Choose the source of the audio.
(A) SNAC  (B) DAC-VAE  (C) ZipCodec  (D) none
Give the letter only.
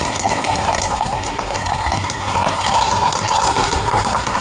A